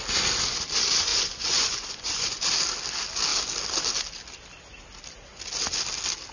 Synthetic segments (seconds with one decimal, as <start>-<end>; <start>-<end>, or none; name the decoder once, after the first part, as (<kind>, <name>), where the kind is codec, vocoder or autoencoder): 1.1-2.4 (vocoder, Vocos)